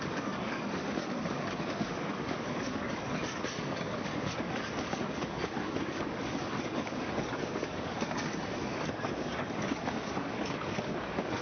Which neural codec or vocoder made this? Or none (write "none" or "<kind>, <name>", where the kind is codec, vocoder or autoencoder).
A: codec, DAC